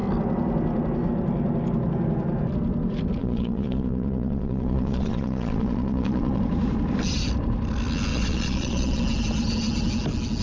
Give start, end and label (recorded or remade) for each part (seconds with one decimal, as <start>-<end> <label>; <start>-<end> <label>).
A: 0.0-3.2 recorded; 3.2-6.4 remade; 6.4-8.1 recorded; 8.1-9.0 remade; 9.0-10.4 recorded